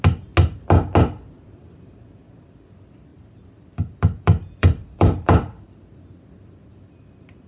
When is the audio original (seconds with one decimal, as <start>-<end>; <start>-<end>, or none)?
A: 0.0-3.1; 7.1-7.5

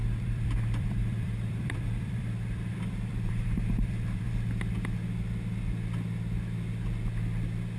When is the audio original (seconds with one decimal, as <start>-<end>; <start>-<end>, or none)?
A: 4.3-7.8